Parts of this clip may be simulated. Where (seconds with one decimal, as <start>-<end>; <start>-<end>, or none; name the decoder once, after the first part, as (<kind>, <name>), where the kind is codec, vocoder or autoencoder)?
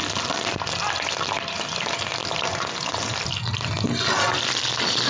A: none